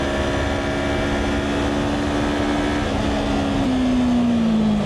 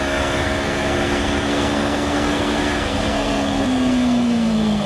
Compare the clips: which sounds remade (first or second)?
second